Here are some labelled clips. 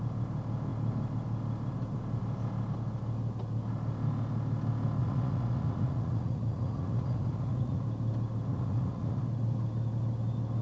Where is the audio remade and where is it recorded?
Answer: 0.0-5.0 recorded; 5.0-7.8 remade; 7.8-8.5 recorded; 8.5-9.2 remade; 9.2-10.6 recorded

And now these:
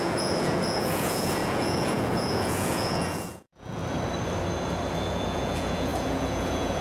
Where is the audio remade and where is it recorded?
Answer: 0.0-3.8 remade; 3.8-5.0 recorded; 5.0-6.8 remade